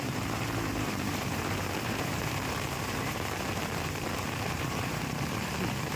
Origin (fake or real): fake